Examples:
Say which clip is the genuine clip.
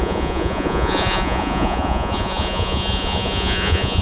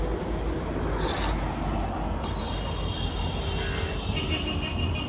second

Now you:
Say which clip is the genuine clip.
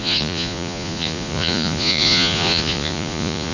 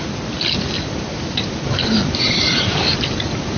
second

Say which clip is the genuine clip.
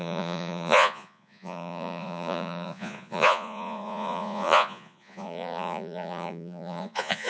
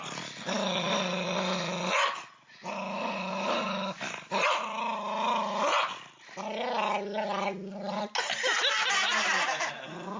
second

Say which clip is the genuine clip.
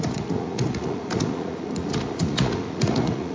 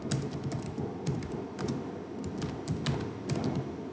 second